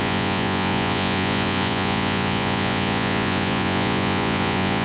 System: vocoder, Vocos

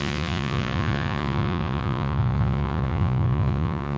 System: vocoder, Vocos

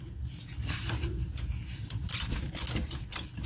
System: none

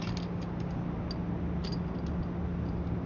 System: none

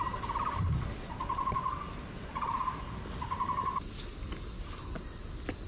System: none